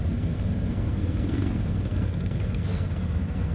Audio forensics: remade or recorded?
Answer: remade